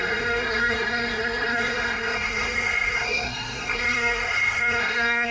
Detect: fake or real fake